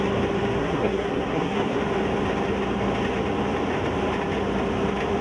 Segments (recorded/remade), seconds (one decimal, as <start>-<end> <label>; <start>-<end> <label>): 0.0-0.6 recorded; 0.6-1.8 remade; 1.8-5.2 recorded